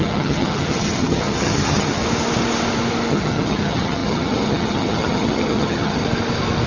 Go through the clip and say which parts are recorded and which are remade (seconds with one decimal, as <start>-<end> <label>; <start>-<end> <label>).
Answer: 0.0-2.0 remade; 2.0-3.1 recorded; 3.1-6.0 remade; 6.0-6.7 recorded